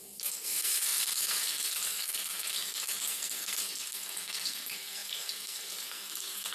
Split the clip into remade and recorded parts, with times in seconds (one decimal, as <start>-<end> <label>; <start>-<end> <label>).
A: 0.0-6.5 remade